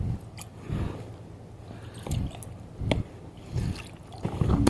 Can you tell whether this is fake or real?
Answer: real